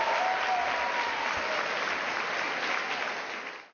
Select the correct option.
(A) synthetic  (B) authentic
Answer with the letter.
B